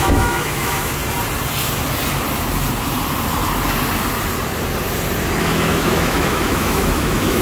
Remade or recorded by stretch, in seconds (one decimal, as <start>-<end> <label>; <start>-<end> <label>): 0.0-1.0 remade; 1.0-5.4 recorded; 5.4-7.4 remade